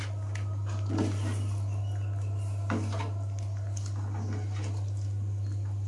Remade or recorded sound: recorded